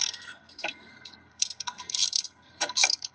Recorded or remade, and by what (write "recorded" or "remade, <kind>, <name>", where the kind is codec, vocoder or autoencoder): remade, codec, SNAC